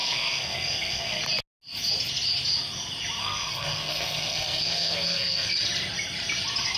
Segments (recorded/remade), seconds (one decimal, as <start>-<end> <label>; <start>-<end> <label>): 0.0-1.2 remade; 1.2-3.2 recorded; 3.2-5.5 remade; 5.5-6.8 recorded